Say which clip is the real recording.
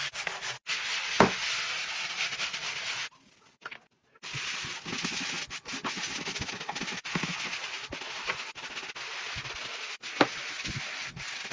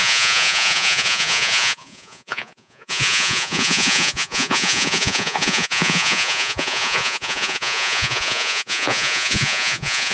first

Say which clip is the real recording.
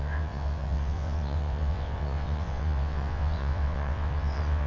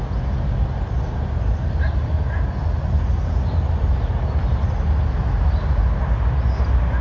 second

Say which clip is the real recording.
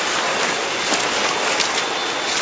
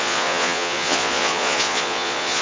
first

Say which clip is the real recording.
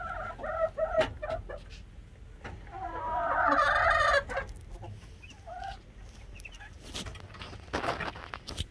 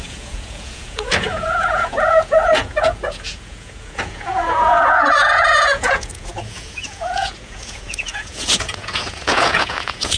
first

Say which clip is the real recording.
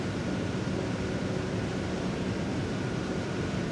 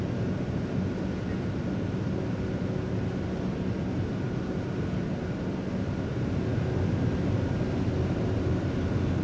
second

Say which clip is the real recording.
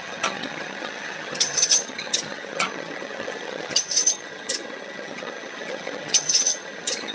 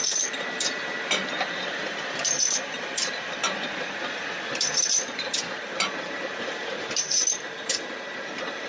second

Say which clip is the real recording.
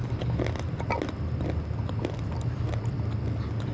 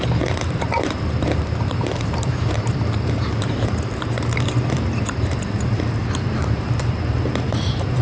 first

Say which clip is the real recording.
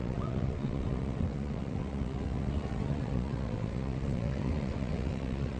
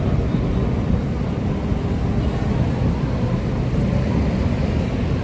second